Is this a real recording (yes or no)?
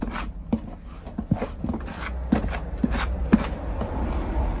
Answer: yes